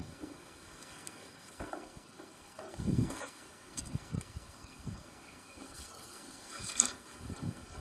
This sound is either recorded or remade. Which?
remade